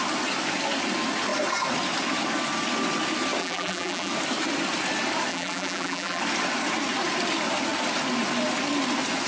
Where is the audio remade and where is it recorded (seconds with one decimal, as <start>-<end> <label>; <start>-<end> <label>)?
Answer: 0.0-3.4 recorded; 3.4-4.1 remade; 4.1-5.3 recorded; 5.3-6.2 remade; 6.2-9.3 recorded